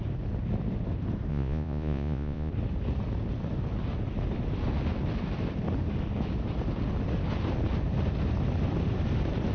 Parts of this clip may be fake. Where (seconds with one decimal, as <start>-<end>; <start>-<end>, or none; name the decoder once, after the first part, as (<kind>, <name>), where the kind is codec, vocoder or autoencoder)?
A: 1.3-2.5 (vocoder, Vocos)